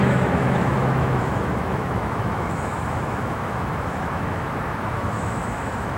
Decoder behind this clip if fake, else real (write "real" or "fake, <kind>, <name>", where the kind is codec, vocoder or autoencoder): fake, autoencoder, DAC-VAE